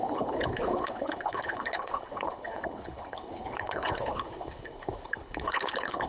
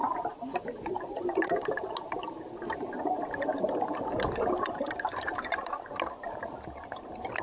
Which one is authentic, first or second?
second